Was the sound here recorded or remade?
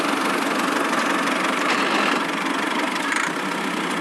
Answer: recorded